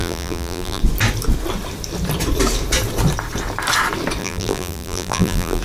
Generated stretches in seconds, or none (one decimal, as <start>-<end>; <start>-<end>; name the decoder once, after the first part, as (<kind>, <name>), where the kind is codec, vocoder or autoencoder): 0.0-0.8 (vocoder, BigVGAN v2); 4.2-5.6